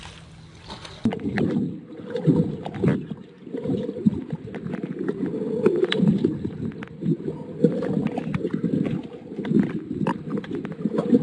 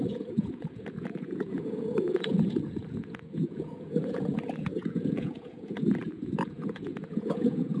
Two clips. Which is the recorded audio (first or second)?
first